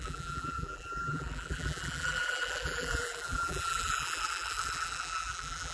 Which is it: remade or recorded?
remade